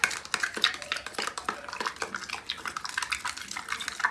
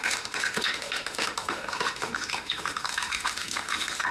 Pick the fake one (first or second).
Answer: second